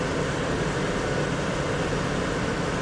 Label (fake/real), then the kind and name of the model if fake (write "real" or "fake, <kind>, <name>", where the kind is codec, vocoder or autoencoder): real